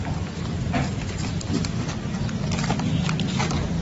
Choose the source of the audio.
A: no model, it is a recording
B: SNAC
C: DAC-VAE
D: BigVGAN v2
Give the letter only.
A